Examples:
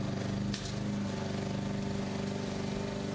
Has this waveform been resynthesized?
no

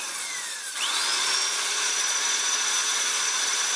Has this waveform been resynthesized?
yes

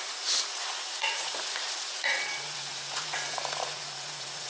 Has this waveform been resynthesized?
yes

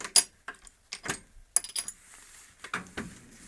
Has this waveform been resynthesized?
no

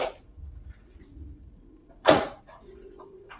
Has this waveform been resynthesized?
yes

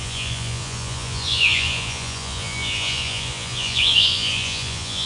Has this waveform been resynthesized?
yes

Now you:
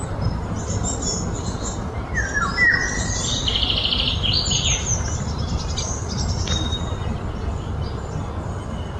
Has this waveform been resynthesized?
no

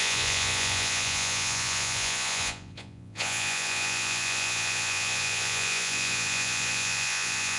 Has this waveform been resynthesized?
yes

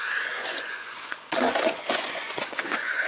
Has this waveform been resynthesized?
yes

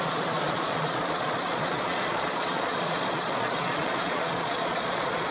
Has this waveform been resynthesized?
yes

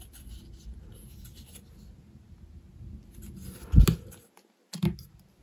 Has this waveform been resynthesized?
no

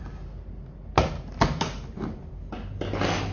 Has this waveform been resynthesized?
no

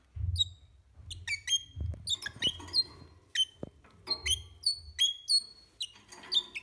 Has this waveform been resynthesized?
no